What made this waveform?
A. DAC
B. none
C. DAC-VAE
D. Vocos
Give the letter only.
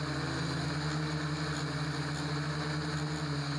B